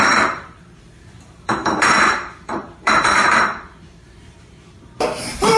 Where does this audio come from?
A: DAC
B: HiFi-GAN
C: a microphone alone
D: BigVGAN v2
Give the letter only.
D